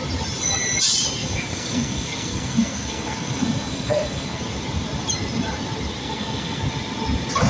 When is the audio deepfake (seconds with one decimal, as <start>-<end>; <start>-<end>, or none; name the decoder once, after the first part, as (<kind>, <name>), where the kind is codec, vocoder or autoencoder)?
1.2-4.4 (codec, SNAC); 6.0-6.6

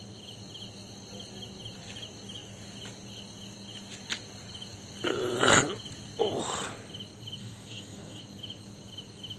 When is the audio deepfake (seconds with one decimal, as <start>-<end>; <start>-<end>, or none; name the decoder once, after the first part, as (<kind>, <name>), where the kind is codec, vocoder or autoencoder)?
7.4-8.2 (codec, DAC)